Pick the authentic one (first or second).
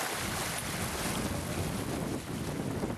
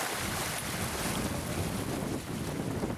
first